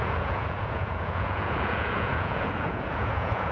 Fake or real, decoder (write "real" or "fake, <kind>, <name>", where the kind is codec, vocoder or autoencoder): fake, vocoder, Vocos